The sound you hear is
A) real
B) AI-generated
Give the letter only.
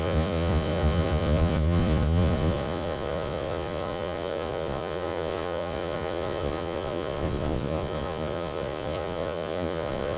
B